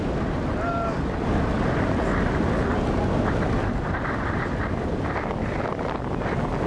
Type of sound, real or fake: real